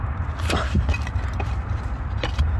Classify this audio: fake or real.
fake